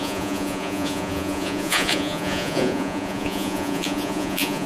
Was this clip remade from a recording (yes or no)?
yes